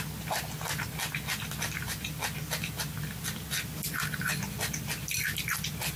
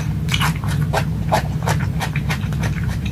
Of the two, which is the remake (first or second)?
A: second